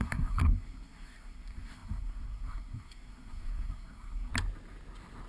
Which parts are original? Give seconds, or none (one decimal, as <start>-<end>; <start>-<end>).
4.3-5.3